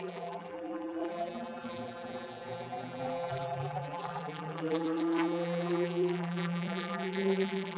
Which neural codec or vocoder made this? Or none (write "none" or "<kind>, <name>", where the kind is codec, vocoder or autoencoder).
vocoder, BigVGAN v2